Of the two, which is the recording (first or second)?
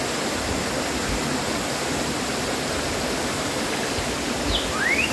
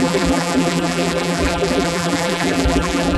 first